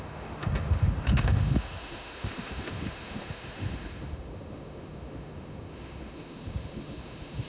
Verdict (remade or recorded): remade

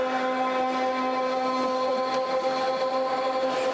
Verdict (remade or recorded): recorded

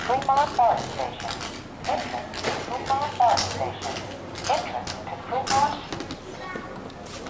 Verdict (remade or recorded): recorded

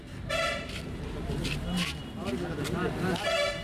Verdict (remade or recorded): recorded